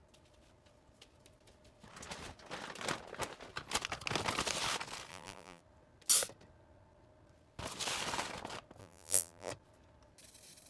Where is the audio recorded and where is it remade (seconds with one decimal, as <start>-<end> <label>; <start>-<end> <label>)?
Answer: 0.0-5.1 recorded; 5.1-5.6 remade; 5.6-8.8 recorded; 8.8-9.5 remade; 9.5-10.7 recorded